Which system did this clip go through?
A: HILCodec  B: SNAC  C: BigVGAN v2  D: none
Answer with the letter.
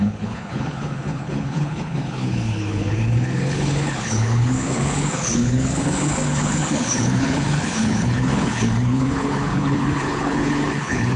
A